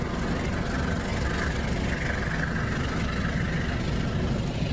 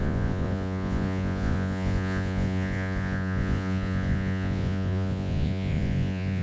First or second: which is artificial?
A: second